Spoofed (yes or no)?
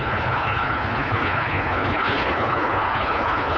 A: yes